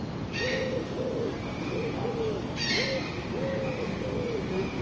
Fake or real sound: real